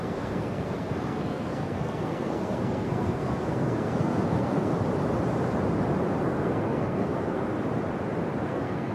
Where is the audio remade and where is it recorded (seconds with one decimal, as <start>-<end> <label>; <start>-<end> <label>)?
0.0-4.7 remade; 4.7-6.2 recorded; 6.2-7.5 remade; 7.5-8.4 recorded; 8.4-8.9 remade